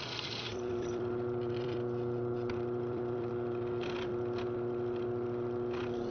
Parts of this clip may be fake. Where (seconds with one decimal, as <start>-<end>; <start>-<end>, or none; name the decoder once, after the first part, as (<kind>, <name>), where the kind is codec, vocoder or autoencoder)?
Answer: 0.5-3.3 (vocoder, BigVGAN v2)